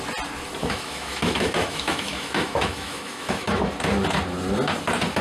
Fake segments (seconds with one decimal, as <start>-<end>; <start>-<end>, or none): 0.6-3.7